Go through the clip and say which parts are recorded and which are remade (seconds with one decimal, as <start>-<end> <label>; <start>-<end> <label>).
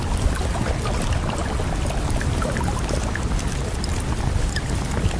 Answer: 0.0-1.4 recorded; 1.4-2.6 remade; 2.6-5.2 recorded